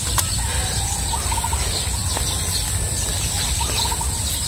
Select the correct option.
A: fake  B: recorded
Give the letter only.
B